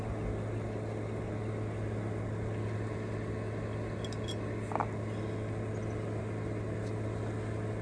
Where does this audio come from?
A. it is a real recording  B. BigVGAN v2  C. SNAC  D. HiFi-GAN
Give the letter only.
A